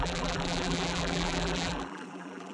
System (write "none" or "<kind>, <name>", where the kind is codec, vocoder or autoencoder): vocoder, BigVGAN v2